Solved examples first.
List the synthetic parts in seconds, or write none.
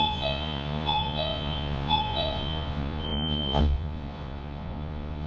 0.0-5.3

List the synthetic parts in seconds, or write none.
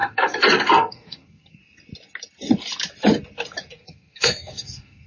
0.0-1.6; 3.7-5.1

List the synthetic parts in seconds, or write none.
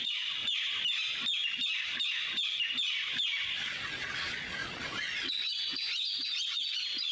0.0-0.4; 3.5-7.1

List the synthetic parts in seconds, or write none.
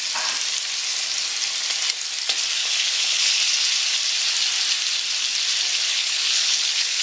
2.6-3.4; 5.9-7.0